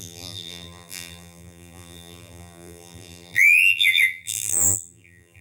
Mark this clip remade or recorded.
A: remade